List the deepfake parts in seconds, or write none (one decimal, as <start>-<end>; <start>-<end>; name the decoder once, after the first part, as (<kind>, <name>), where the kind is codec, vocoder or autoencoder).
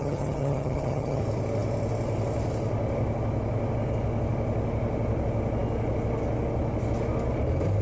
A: 0.0-1.2 (vocoder, HiFi-GAN)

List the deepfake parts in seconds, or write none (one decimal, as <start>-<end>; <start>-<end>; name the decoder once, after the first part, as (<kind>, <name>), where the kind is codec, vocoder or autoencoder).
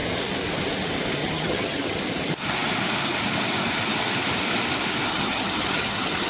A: 1.2-2.0 (vocoder, HiFi-GAN); 5.1-6.3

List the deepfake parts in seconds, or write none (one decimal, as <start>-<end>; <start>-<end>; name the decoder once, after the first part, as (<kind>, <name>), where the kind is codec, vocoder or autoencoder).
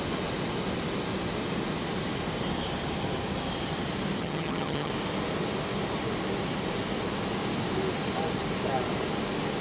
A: 4.2-4.9 (vocoder, HiFi-GAN)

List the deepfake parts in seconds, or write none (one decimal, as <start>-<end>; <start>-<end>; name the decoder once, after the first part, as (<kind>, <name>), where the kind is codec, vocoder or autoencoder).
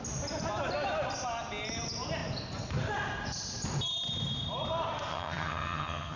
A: 5.1-6.2 (vocoder, HiFi-GAN)